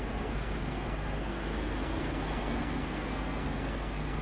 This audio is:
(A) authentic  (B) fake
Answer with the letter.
B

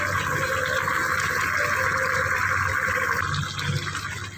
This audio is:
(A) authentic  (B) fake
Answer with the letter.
A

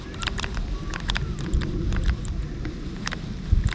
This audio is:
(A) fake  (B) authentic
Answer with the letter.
B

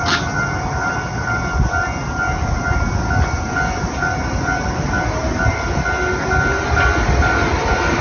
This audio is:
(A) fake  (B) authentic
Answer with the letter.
B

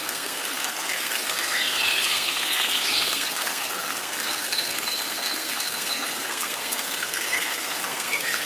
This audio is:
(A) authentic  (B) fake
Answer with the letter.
B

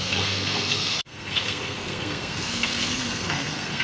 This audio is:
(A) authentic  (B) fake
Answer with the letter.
B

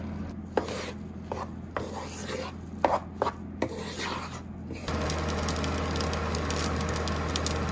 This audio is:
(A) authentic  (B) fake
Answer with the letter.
A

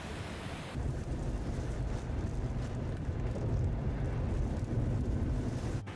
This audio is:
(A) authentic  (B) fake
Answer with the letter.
A